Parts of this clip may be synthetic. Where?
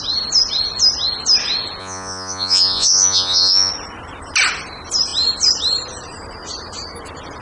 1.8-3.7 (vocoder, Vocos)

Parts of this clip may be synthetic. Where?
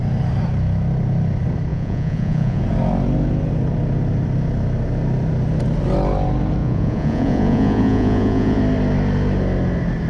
1.7-2.6 (vocoder, Vocos); 6.6-8.6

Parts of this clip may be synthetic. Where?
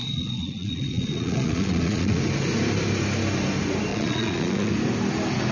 0.0-2.2 (vocoder, Vocos); 3.9-4.7